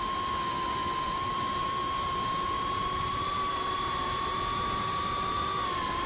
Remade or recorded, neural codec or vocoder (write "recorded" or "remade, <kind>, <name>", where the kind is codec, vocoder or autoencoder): recorded